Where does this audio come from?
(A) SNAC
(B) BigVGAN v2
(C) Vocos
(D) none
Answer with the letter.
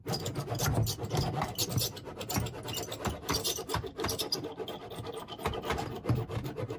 D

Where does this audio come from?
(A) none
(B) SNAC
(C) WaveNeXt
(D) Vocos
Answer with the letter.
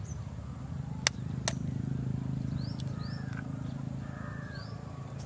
A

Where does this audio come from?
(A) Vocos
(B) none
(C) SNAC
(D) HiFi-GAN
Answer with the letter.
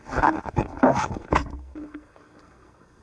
C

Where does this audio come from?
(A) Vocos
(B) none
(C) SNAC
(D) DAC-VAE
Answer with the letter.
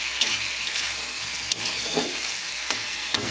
C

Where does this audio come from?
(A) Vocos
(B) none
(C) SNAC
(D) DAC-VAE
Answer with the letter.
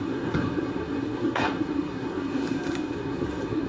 C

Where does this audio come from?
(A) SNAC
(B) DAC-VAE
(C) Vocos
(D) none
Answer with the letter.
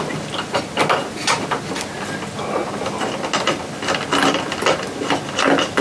D